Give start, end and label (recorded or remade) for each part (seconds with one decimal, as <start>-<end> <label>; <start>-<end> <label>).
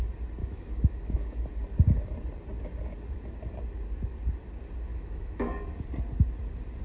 0.0-0.4 recorded; 0.4-1.4 remade; 1.4-4.9 recorded; 4.9-5.5 remade; 5.5-6.8 recorded